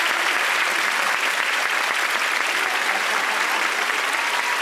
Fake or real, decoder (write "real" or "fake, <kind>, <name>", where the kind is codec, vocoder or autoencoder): real